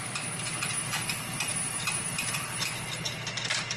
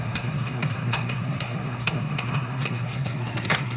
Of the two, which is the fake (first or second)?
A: second